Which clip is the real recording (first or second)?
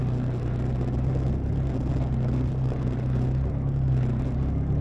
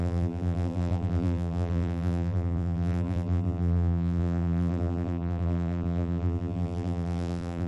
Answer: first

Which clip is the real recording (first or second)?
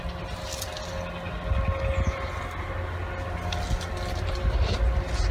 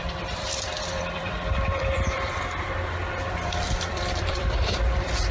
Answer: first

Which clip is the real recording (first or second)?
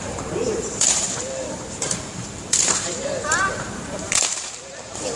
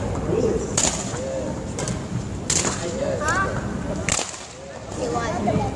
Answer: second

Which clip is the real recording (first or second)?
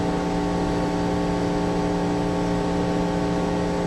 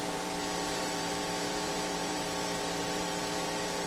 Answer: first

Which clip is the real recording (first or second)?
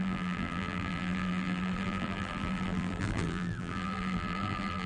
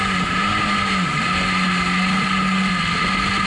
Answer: second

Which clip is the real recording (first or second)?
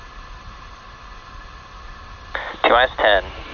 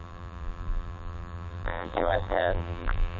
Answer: first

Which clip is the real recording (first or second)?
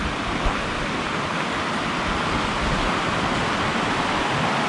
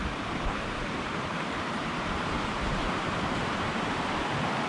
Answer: first